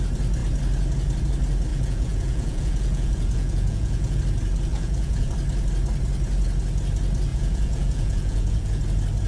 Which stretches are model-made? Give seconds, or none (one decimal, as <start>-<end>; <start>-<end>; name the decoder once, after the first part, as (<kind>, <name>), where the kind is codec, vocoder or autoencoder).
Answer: 1.7-4.2 (vocoder, Vocos); 4.7-5.3; 7.3-8.8